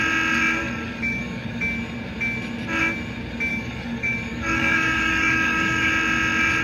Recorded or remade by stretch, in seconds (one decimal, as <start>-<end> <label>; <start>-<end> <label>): 0.0-0.6 recorded; 0.6-1.6 remade; 1.6-3.5 recorded; 3.5-5.9 remade; 5.9-6.6 recorded